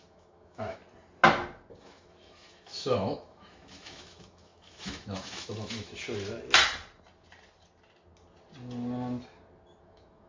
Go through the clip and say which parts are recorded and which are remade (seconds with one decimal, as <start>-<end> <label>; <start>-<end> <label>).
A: 0.0-0.8 remade; 0.8-1.8 recorded; 1.8-5.9 remade; 5.9-9.8 recorded; 9.8-10.3 remade